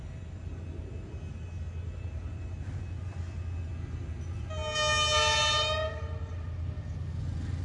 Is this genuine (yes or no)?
yes